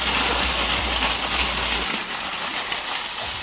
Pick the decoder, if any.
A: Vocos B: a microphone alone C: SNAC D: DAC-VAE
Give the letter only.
B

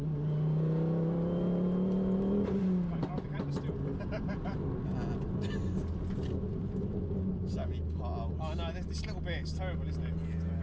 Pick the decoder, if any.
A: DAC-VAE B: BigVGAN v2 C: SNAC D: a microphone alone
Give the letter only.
D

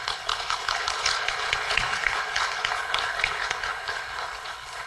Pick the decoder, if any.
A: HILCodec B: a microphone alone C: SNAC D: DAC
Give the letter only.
A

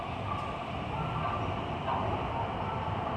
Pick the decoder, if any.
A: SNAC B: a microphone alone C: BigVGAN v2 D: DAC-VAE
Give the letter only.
B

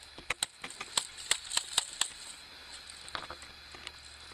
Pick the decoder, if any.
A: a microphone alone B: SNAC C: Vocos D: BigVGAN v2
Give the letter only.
A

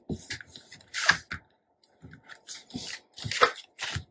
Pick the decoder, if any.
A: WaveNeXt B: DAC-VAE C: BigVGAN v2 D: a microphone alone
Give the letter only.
D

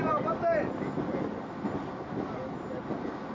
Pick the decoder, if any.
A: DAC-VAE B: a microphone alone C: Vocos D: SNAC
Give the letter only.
B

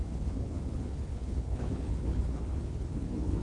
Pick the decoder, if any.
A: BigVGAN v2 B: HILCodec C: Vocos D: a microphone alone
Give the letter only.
B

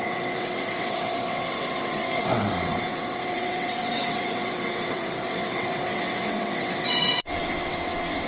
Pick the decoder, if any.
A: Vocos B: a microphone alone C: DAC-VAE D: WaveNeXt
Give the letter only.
D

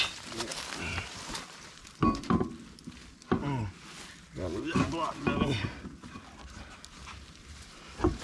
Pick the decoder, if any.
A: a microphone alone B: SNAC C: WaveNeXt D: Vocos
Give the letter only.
A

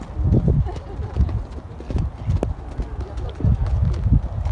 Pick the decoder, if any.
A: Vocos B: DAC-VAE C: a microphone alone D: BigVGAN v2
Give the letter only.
C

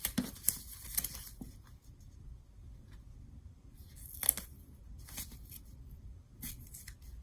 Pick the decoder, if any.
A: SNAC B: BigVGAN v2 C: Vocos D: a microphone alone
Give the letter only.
D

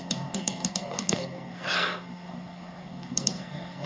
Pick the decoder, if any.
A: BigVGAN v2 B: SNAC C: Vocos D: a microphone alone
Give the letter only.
B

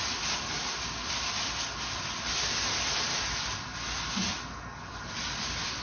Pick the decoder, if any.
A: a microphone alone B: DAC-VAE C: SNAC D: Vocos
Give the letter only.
A